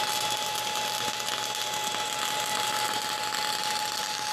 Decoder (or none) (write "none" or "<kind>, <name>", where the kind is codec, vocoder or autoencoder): none